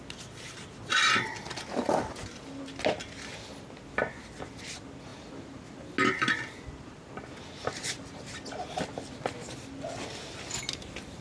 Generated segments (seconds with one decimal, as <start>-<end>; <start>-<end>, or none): none